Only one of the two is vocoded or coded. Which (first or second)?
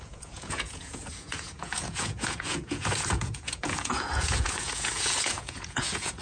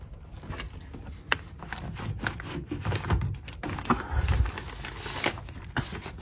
first